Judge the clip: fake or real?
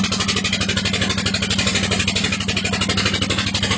real